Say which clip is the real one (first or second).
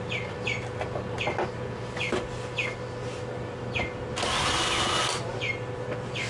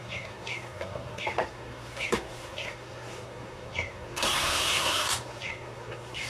first